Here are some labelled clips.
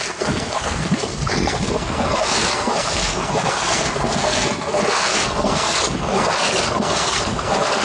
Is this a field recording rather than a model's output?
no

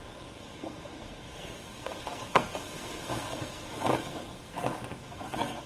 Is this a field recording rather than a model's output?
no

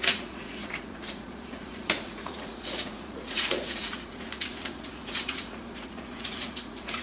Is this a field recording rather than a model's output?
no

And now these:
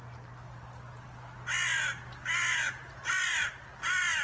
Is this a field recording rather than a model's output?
yes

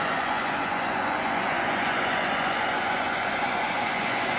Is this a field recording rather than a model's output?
no